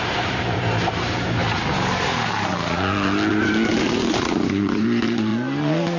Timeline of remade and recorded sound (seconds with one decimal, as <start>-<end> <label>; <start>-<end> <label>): 0.0-1.4 remade; 1.4-3.8 recorded; 3.8-5.3 remade; 5.3-6.0 recorded